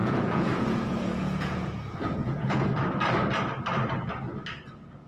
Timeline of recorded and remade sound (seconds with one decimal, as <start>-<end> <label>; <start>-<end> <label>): 0.0-2.7 remade; 2.7-5.1 recorded